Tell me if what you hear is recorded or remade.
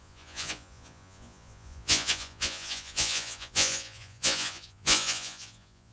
remade